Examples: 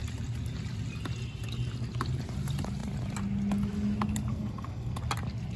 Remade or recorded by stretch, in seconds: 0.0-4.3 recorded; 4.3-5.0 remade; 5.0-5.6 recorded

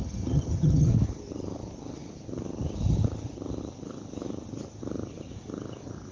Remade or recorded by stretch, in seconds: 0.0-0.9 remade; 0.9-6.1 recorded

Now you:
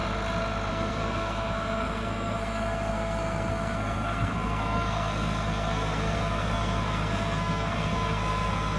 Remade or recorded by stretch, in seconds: 0.0-0.7 recorded; 0.7-8.8 remade

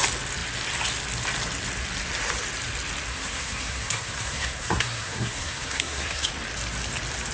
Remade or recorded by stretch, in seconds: 0.0-3.1 recorded; 3.1-6.3 remade; 6.3-7.3 recorded

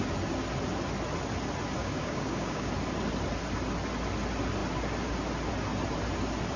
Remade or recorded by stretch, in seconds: 0.0-1.8 recorded; 1.8-2.7 remade; 2.7-6.6 recorded

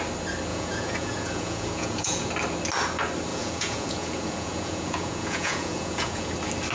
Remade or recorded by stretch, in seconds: 0.0-0.5 recorded; 0.5-2.3 remade; 2.3-3.3 recorded; 3.3-6.3 remade; 6.3-6.7 recorded